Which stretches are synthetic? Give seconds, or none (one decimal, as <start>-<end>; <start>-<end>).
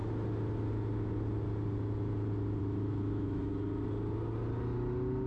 2.6-3.5